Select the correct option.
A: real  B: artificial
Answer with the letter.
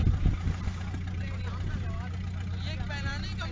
A